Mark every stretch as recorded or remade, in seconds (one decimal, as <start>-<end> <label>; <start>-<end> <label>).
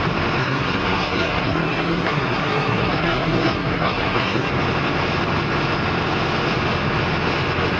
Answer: 0.0-0.4 recorded; 0.4-4.5 remade; 4.5-7.8 recorded